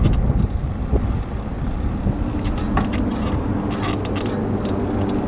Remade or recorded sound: recorded